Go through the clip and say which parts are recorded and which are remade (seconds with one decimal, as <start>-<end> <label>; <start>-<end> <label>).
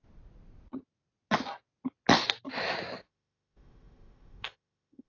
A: 0.0-3.0 recorded; 3.0-5.1 remade